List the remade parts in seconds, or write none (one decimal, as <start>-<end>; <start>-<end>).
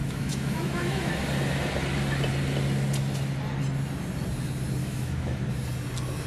0.0-1.1; 4.8-5.4